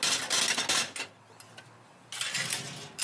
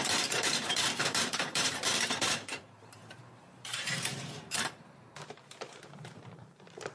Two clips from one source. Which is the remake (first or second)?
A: second